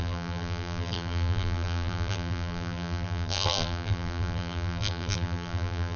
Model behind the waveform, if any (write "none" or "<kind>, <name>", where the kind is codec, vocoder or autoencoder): vocoder, BigVGAN v2